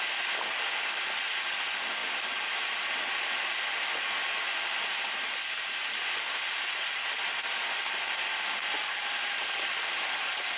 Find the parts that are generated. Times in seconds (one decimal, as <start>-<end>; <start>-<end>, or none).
none